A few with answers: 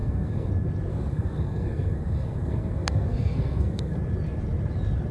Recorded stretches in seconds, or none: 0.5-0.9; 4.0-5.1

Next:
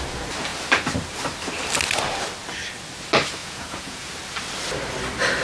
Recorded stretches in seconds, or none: 0.0-3.4; 4.1-5.4

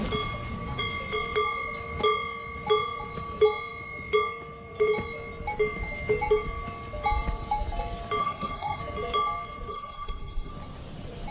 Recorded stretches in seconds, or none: 0.0-8.2; 8.8-9.7; 10.5-11.3

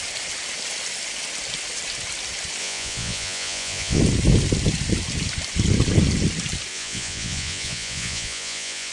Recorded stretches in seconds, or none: 0.0-2.6; 4.0-6.7

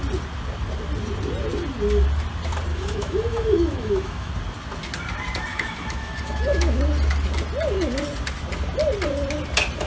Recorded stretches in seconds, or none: 0.0-2.7; 4.3-5.5; 6.8-9.9

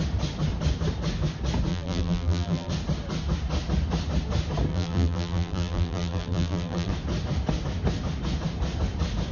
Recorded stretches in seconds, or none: 0.0-1.7; 2.7-4.7; 6.9-9.3